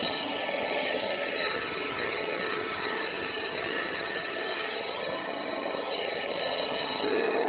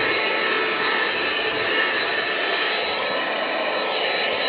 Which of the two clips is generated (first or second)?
first